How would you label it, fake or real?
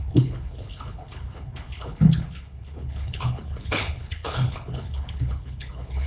fake